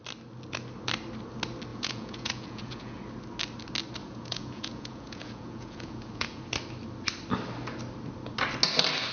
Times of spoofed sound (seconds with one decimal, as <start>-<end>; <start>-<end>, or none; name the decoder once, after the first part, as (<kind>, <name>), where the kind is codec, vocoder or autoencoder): 1.7-3.0 (vocoder, Vocos); 4.0-6.4